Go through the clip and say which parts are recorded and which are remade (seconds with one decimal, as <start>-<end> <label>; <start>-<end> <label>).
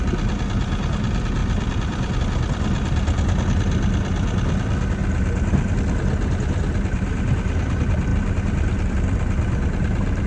0.0-1.4 recorded; 1.4-2.2 remade; 2.2-10.3 recorded